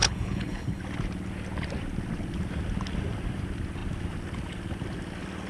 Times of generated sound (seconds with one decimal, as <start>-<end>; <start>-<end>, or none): 0.0-0.8